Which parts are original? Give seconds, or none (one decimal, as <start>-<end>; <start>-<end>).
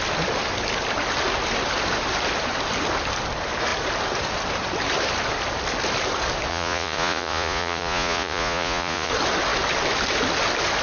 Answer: 0.0-6.5; 9.1-10.8